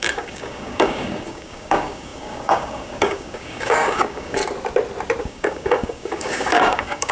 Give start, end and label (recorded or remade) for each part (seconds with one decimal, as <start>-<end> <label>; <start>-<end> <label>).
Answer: 0.0-4.4 remade; 4.4-5.2 recorded; 5.2-7.1 remade